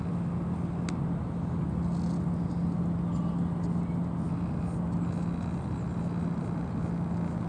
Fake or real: real